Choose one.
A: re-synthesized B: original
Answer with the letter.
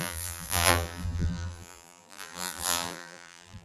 A